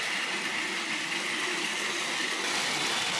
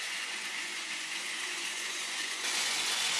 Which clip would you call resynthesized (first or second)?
second